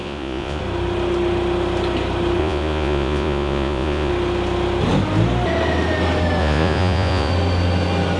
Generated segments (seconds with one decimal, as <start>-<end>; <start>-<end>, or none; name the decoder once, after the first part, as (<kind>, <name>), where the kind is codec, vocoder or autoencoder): 0.0-0.6 (vocoder, Vocos); 2.4-4.1; 6.4-7.3